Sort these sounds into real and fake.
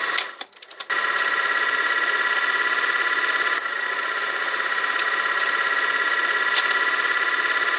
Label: real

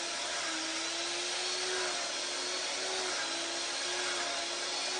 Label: real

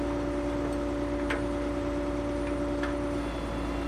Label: real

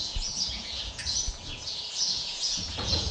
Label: fake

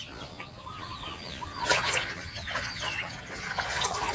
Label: fake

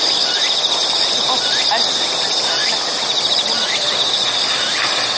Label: real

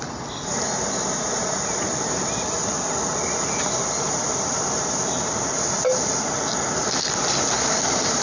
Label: real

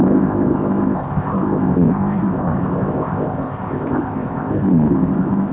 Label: fake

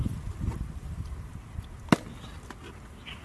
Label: real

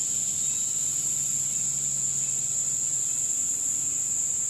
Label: real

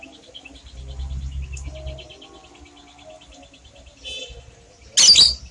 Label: real